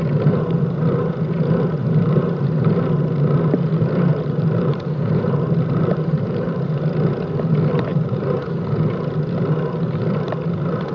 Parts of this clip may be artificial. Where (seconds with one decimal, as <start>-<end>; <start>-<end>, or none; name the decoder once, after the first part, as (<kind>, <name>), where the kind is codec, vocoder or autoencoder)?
1.8-2.6 (vocoder, BigVGAN v2); 4.1-6.6; 7.9-8.4